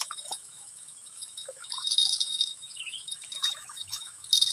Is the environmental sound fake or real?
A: fake